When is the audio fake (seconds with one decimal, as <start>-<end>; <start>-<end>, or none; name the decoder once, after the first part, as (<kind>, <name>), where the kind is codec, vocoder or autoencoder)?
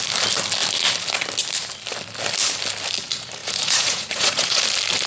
3.4-4.6 (vocoder, Vocos)